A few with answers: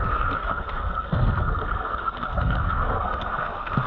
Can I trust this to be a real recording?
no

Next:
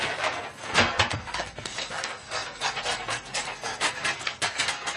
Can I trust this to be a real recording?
no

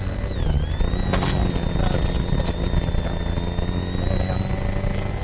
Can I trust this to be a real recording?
yes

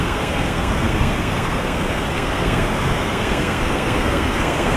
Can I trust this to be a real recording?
no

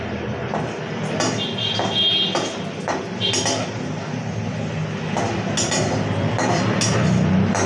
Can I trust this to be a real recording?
yes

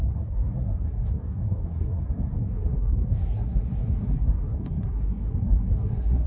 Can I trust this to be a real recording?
no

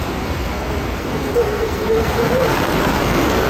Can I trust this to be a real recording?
no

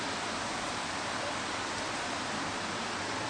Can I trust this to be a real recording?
yes